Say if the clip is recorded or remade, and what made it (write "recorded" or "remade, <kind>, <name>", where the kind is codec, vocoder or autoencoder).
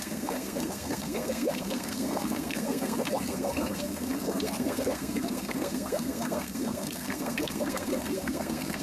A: remade, codec, SNAC